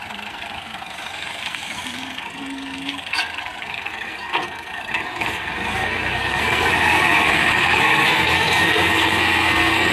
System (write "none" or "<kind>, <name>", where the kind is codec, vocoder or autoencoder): codec, SNAC